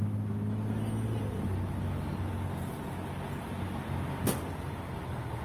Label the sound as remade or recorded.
recorded